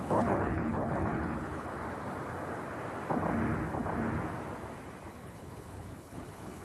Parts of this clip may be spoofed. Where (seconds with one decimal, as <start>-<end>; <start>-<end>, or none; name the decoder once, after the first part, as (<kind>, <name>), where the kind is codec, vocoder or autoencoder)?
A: 0.0-1.7 (codec, HILCodec); 5.1-6.6